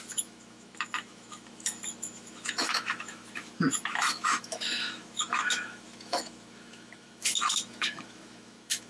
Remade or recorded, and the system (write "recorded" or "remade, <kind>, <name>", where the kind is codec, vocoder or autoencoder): remade, autoencoder, DAC-VAE